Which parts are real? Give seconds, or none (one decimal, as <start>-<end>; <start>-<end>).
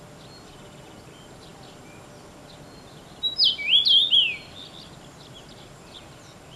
0.0-6.6